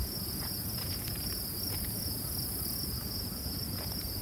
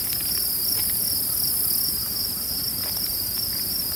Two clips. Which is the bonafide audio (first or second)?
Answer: second